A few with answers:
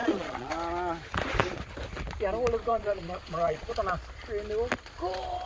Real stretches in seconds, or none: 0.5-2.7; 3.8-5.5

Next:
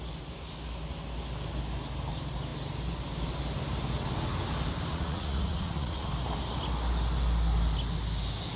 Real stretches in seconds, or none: 0.0-4.9; 6.1-8.6

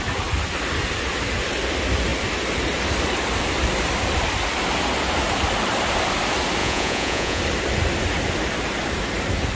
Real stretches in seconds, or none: 0.0-6.6; 7.4-9.5

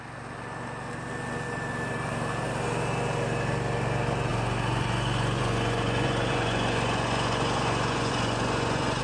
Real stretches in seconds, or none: 0.0-4.3

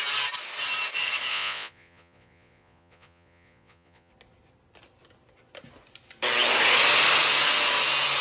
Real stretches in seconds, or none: 0.0-1.3; 4.1-8.2

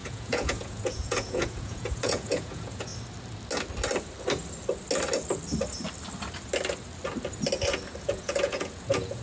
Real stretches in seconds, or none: 2.9-8.0

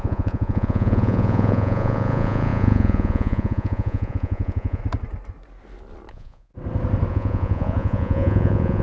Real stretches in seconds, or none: 4.8-6.1; 6.5-7.1

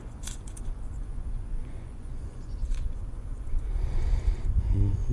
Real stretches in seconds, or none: none